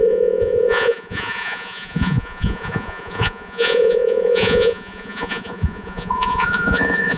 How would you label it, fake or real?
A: fake